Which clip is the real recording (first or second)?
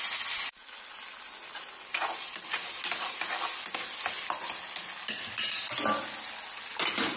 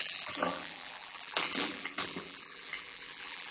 first